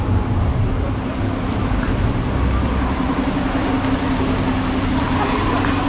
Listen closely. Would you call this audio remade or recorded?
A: recorded